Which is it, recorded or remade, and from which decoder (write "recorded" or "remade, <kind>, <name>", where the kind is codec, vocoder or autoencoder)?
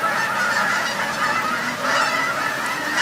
remade, vocoder, Vocos